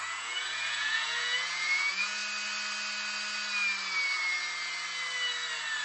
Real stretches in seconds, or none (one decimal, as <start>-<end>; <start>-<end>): 2.2-5.8